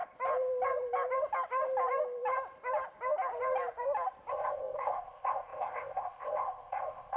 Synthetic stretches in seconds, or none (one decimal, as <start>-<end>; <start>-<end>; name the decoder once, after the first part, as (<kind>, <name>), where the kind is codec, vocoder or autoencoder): 4.3-7.2 (codec, ZipCodec)